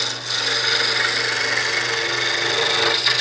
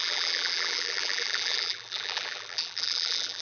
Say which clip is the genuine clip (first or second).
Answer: first